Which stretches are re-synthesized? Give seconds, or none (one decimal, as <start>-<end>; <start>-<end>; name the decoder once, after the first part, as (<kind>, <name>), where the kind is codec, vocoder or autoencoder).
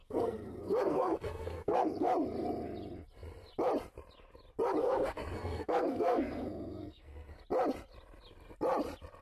0.0-2.1 (codec, SNAC); 4.8-7.4